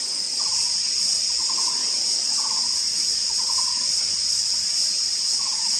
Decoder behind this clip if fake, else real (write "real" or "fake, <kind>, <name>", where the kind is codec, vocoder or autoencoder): real